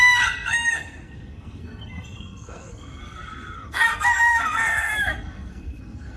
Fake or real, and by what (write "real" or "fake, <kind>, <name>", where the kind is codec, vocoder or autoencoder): fake, codec, SNAC